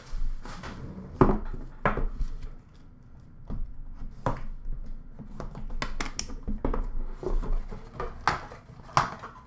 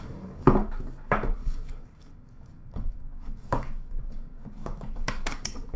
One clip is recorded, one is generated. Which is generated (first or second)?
second